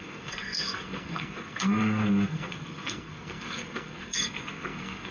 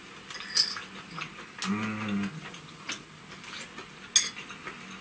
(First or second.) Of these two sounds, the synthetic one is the first